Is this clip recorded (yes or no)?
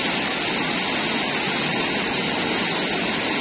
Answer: yes